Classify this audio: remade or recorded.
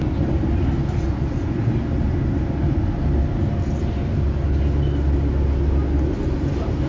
recorded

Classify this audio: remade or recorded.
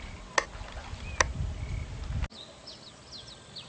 recorded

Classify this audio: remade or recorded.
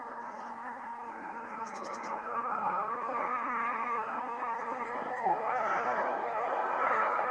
remade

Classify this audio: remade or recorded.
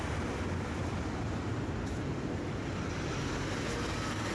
recorded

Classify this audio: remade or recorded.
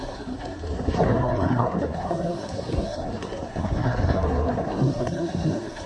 remade